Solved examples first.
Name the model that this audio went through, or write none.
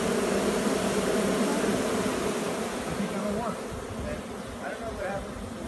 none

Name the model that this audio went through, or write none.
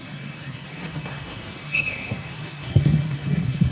codec, SNAC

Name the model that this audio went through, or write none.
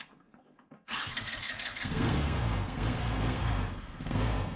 codec, SNAC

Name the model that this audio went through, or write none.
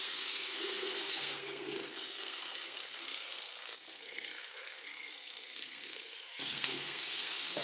codec, SNAC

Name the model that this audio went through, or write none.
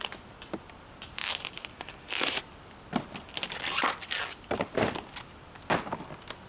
none